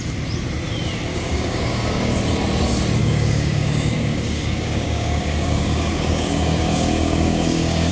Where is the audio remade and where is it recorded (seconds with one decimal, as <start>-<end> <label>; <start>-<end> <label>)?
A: 0.0-1.1 recorded; 1.1-2.1 remade; 2.1-3.0 recorded; 3.0-7.9 remade